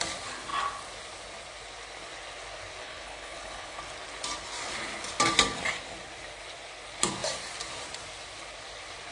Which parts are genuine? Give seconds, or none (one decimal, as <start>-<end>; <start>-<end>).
0.0-2.8; 3.8-9.1